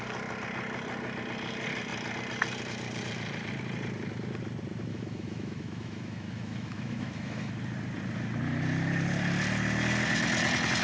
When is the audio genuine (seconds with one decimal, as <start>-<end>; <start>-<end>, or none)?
0.0-4.9; 7.5-10.8